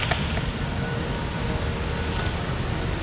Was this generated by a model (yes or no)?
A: no